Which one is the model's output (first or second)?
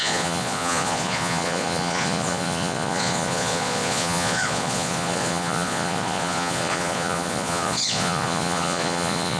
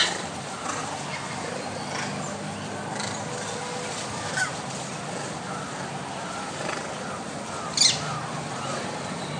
first